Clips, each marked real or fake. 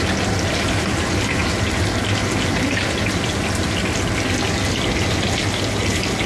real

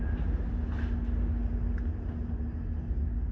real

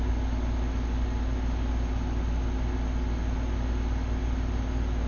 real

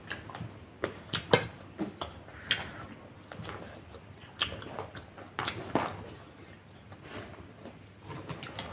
real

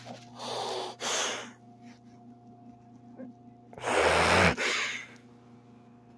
real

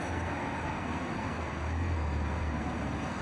fake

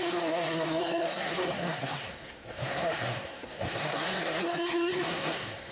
fake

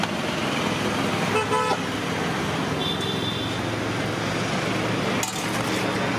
real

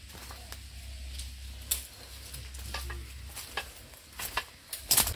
real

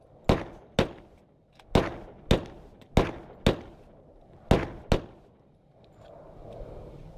real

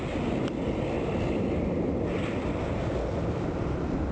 real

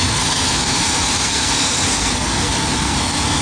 fake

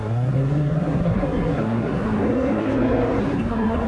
fake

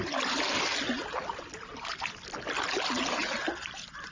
real